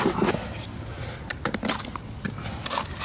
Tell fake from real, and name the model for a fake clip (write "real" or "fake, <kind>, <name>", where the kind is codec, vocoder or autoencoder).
real